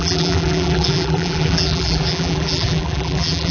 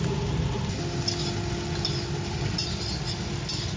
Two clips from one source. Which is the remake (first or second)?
first